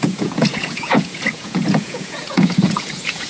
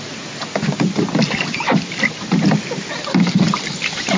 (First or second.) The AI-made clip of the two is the first